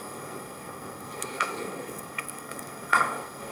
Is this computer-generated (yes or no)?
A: yes